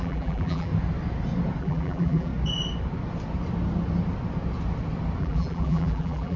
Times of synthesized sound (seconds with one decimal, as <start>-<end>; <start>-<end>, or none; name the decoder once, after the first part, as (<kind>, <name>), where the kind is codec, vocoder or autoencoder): 0.0-0.7 (vocoder, BigVGAN v2); 1.6-2.3; 5.2-6.4